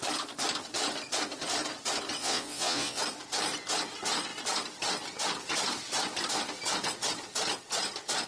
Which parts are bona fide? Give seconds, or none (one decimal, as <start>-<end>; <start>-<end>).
0.0-2.2; 3.0-8.3

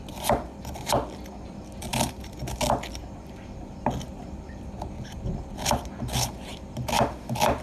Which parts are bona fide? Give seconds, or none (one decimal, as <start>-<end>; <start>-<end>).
0.0-7.6